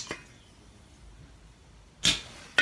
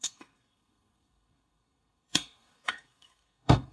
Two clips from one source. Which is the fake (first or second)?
second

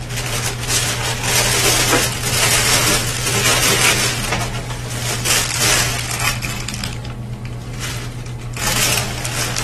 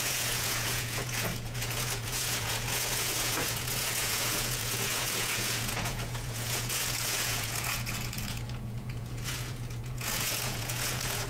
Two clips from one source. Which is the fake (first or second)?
second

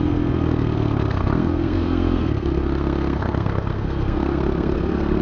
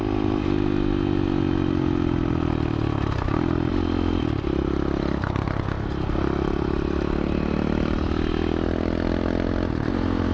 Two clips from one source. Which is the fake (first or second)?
first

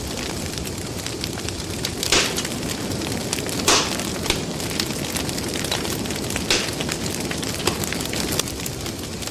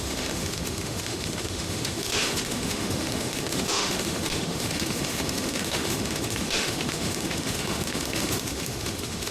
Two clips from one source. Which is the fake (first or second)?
second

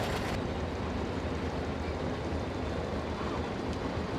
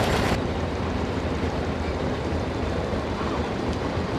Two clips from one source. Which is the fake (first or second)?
second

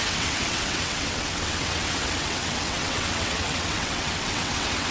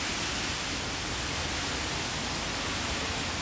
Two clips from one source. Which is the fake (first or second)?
first